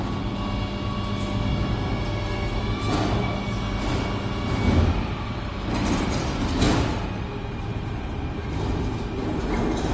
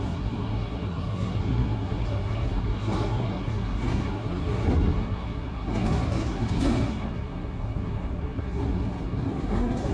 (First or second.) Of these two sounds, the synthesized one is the second